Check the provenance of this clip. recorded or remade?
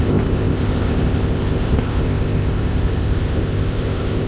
remade